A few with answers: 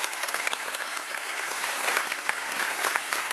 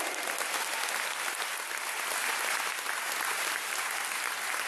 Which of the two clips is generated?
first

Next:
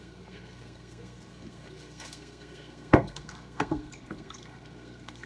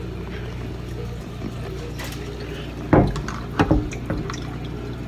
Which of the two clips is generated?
first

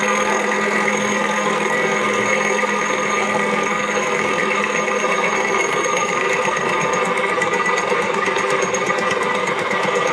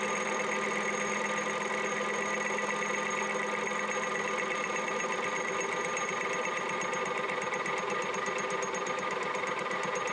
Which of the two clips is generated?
first